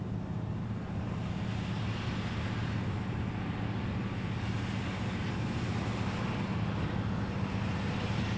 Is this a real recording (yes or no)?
yes